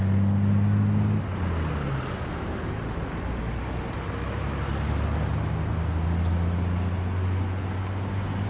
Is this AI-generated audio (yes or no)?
no